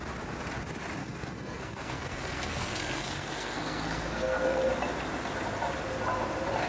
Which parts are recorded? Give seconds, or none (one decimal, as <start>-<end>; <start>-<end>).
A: 0.0-1.0; 4.7-6.7